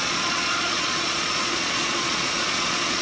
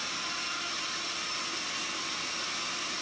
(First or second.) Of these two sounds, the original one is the second